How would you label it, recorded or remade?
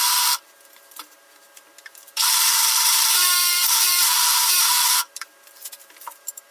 remade